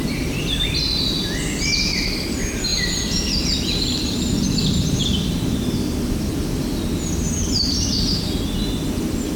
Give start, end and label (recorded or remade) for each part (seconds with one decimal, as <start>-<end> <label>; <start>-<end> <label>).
0.0-2.7 recorded; 2.7-5.0 remade; 5.0-9.4 recorded